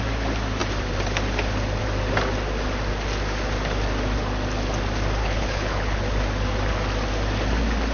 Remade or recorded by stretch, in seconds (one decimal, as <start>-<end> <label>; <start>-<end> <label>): 0.0-5.2 recorded; 5.2-6.0 remade; 6.0-7.9 recorded